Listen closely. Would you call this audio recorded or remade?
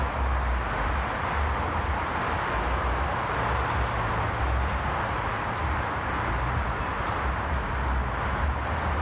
recorded